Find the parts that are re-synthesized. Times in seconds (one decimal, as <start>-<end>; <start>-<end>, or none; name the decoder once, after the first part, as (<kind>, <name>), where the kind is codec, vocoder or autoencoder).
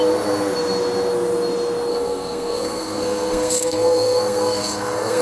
1.9-5.2 (codec, SNAC)